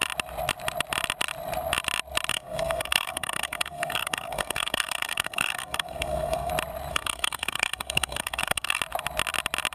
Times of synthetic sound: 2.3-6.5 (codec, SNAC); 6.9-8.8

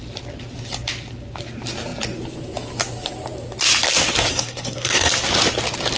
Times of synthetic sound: 4.3-5.1 (codec, SNAC)

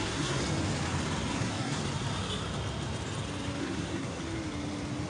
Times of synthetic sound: 0.0-0.4 (codec, SNAC); 1.3-1.8; 3.6-4.2